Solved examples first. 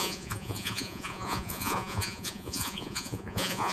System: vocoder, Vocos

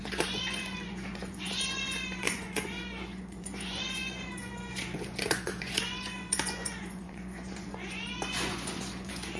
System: vocoder, Vocos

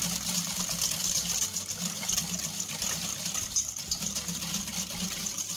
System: none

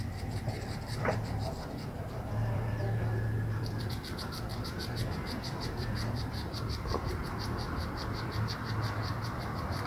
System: vocoder, BigVGAN v2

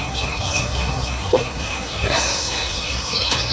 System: codec, SNAC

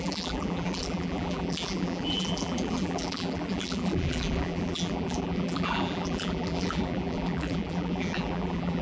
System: vocoder, BigVGAN v2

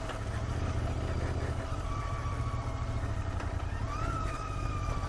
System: none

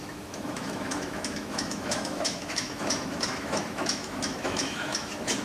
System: autoencoder, DAC-VAE